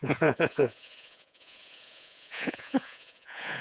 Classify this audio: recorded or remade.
remade